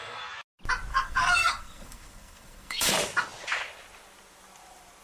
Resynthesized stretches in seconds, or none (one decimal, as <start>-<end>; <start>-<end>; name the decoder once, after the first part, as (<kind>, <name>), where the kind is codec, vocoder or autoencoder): 0.9-2.9 (codec, SNAC)